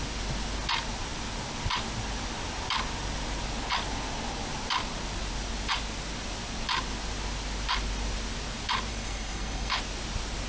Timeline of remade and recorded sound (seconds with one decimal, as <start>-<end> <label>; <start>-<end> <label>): 0.0-8.9 recorded; 8.9-9.8 remade; 9.8-10.5 recorded